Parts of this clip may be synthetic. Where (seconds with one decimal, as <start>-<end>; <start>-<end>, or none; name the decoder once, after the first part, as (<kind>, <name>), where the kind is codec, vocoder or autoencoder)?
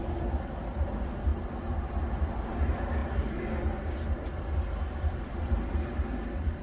none